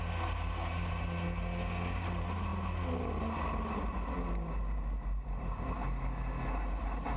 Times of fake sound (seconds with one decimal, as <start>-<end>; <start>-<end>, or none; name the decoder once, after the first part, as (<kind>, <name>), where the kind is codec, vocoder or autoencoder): none

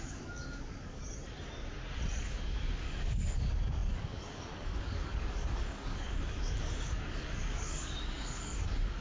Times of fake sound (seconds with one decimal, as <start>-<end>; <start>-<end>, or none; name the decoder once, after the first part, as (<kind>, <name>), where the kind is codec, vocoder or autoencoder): 0.0-1.0 (codec, DAC); 2.2-9.0

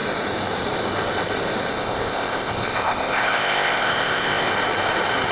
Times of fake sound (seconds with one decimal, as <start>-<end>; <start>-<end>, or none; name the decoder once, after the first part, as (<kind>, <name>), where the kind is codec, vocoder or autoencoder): 1.7-4.5 (codec, ZipCodec)

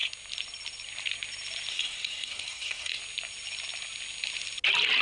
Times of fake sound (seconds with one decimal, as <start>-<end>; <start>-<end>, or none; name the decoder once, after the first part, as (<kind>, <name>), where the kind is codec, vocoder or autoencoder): 1.7-3.0 (codec, SNAC)

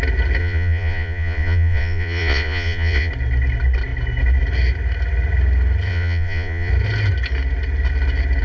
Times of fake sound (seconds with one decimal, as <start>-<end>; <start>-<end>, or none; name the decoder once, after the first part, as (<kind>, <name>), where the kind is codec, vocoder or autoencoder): 0.4-3.1 (vocoder, Vocos); 5.9-6.7

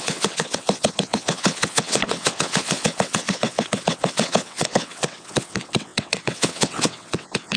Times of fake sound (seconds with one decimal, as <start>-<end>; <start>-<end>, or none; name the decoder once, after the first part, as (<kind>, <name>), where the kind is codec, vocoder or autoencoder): 0.0-7.6 (vocoder, WaveNeXt)